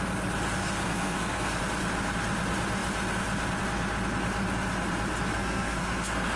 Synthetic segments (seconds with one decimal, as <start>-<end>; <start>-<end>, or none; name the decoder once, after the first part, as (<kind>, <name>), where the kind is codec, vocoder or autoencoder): 0.6-1.6 (codec, SNAC); 5.3-6.4